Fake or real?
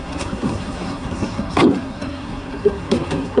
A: fake